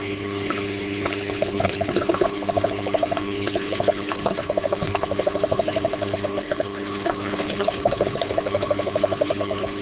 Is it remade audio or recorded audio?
remade